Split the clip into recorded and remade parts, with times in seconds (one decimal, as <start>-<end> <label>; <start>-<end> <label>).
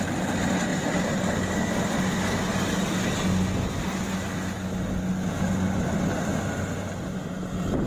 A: 0.0-7.9 recorded